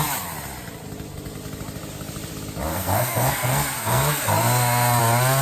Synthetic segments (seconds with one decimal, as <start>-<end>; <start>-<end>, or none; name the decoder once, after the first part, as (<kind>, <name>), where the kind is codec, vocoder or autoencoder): 2.7-5.0 (codec, SNAC)